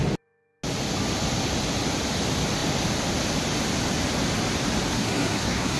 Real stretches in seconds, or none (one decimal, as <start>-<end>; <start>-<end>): 0.0-4.9